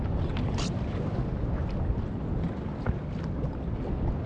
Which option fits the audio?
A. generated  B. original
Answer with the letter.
B